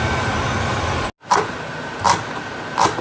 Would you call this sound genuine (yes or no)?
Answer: yes